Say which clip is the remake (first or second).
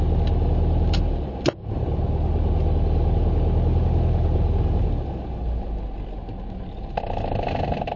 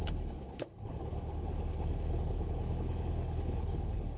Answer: second